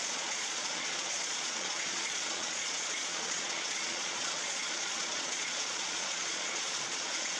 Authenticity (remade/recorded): remade